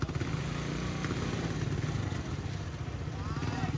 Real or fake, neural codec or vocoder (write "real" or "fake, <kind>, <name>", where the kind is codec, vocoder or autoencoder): real